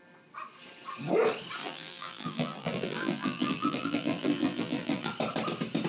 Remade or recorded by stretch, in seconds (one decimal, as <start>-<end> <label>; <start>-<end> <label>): 0.0-1.6 recorded; 1.6-5.1 remade; 5.1-5.9 recorded